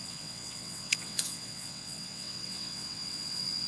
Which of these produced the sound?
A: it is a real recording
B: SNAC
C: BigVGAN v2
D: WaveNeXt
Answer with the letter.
D